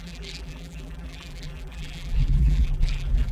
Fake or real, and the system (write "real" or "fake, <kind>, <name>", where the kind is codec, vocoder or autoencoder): fake, vocoder, BigVGAN v2